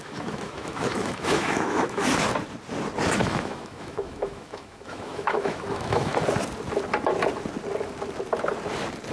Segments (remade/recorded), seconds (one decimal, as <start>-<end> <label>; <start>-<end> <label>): 0.0-2.1 remade; 2.1-3.2 recorded; 3.2-6.1 remade; 6.1-9.1 recorded